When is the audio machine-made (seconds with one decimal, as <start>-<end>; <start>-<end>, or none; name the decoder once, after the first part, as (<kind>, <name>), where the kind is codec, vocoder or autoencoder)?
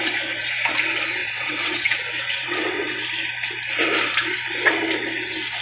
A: 1.2-3.0 (vocoder, WaveNeXt)